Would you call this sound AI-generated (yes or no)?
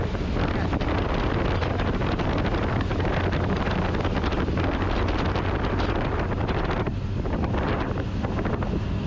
no